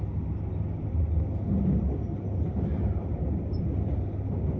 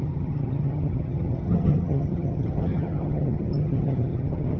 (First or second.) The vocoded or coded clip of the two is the second